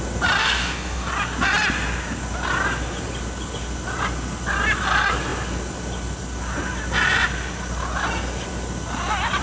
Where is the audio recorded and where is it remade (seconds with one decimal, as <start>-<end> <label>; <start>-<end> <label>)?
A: 0.0-0.4 recorded; 0.4-1.1 remade; 1.1-9.4 recorded